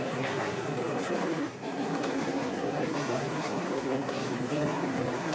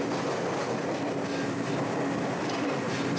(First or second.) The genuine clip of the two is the second